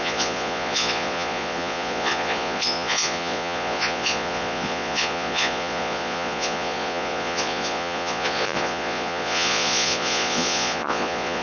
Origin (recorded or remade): remade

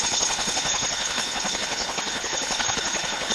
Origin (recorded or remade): remade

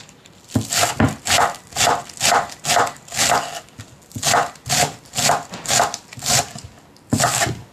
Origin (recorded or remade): recorded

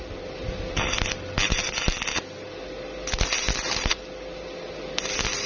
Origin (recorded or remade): recorded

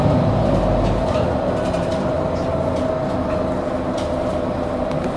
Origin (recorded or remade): recorded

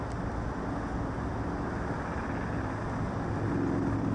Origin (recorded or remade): recorded